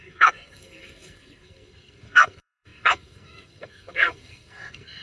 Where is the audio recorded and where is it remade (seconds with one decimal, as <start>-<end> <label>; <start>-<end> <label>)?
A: 0.0-5.0 remade